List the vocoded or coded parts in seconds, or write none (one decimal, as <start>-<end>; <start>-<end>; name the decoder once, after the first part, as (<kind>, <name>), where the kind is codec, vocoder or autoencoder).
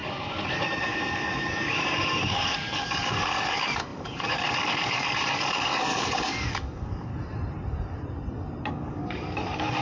0.0-7.1 (codec, DAC); 8.7-9.8